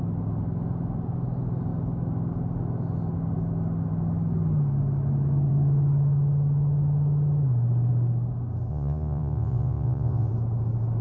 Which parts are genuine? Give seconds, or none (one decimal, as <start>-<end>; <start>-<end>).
0.0-8.7; 10.3-11.0